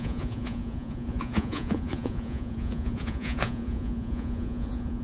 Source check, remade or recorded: remade